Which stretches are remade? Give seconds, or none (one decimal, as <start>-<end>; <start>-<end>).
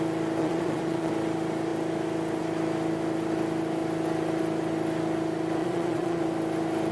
0.4-1.1; 5.6-6.2